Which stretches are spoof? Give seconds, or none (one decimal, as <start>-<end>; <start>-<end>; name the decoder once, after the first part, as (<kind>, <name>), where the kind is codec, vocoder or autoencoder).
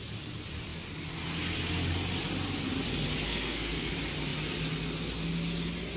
3.3-3.9 (codec, SNAC)